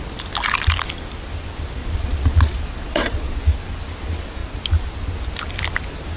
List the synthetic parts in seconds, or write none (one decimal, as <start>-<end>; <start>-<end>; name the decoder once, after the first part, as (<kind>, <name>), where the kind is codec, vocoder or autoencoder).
1.8-3.4 (vocoder, Vocos)